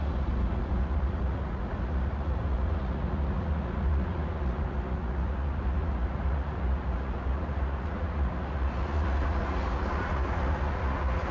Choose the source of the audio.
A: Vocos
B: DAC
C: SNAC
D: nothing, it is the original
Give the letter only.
A